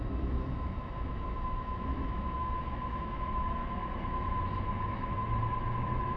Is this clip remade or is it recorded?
remade